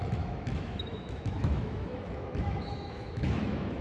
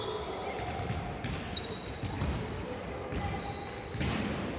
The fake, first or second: first